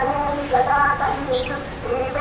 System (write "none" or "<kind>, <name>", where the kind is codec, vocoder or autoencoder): none